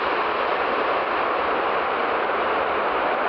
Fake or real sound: real